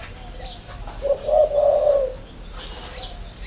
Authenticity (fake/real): real